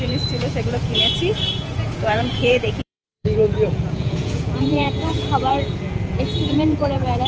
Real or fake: fake